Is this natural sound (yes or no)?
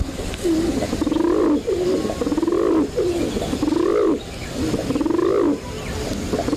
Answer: yes